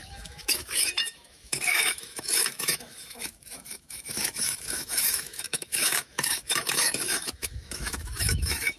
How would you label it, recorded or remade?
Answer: remade